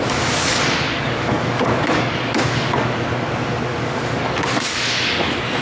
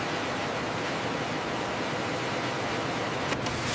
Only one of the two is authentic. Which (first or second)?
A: second